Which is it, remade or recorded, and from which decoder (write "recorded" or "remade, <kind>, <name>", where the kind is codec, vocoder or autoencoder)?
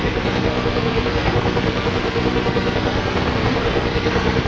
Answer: remade, codec, SNAC